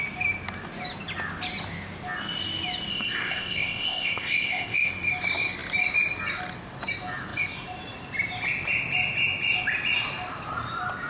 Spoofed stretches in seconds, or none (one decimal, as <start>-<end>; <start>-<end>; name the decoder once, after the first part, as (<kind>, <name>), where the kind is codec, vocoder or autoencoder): 2.9-4.9 (codec, ZipCodec)